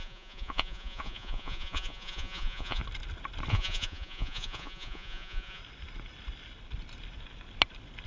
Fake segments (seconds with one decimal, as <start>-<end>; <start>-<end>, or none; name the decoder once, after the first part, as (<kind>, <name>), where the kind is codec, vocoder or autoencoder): 0.0-2.8 (vocoder, Vocos); 3.5-5.6